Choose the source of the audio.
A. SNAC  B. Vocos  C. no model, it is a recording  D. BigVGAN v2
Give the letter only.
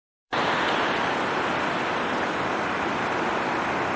D